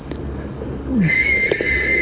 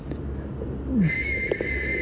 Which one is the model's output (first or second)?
first